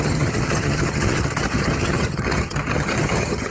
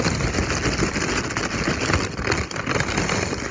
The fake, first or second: first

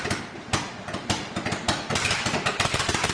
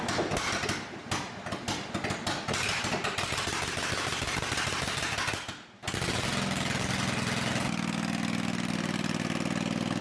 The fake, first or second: first